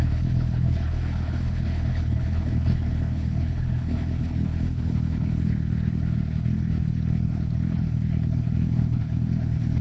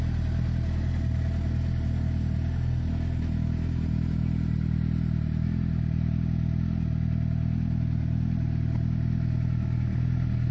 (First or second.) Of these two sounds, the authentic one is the second